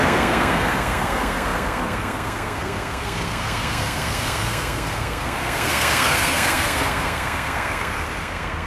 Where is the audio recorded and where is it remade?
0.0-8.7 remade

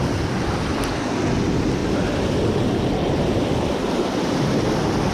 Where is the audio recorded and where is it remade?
0.0-5.1 recorded

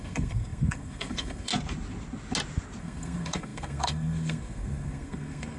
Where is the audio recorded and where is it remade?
0.0-1.5 remade; 1.5-2.8 recorded; 2.8-5.6 remade

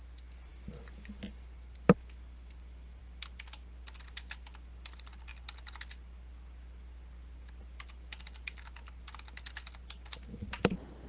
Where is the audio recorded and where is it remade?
0.0-11.1 recorded